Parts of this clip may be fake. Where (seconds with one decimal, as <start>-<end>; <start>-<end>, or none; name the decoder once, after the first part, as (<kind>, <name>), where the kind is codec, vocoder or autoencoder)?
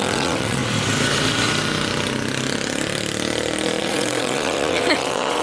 0.0-0.6 (vocoder, WaveNeXt); 3.8-5.4